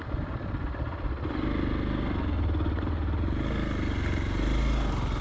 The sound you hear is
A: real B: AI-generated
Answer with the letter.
A